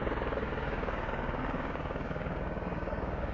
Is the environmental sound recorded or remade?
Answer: remade